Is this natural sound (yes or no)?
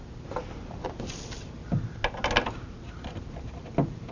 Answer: yes